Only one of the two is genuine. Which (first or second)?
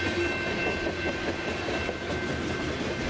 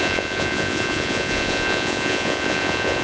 first